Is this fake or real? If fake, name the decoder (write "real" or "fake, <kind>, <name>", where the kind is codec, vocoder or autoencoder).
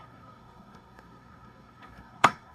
fake, codec, SNAC